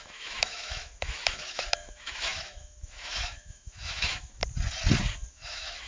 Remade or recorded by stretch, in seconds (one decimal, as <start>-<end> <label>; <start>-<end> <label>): 0.0-4.4 remade; 4.4-5.3 recorded; 5.3-5.9 remade